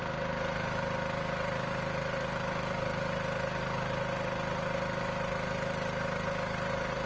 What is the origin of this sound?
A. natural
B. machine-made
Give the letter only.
A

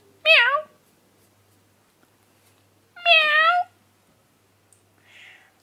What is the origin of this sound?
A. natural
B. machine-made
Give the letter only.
A